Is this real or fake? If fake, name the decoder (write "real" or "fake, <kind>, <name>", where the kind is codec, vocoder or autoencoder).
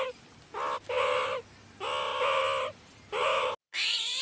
real